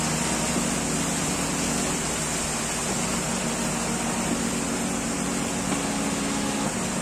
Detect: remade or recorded recorded